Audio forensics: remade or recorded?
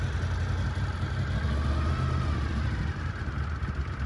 recorded